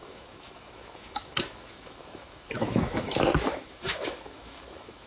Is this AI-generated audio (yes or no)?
yes